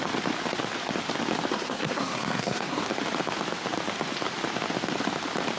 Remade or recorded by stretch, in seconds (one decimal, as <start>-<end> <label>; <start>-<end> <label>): 0.0-1.5 recorded; 1.5-2.8 remade; 2.8-5.6 recorded